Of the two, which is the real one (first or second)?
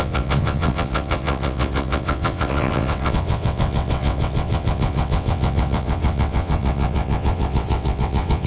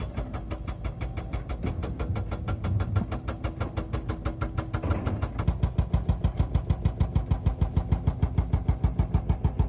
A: second